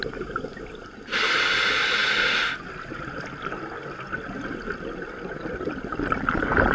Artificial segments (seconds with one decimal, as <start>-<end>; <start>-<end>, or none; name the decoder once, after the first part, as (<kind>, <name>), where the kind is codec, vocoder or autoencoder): none